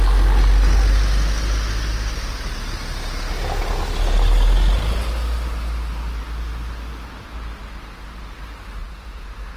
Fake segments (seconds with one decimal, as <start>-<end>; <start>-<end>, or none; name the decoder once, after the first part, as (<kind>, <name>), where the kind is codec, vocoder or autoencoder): 8.8-9.6 (vocoder, Vocos)